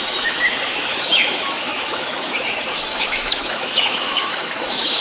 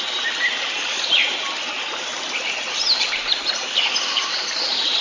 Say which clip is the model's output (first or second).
first